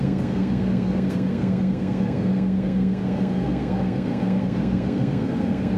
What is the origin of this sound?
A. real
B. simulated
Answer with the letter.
B